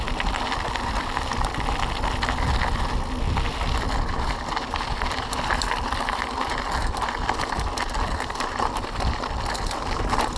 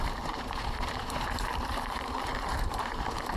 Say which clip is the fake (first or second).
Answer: second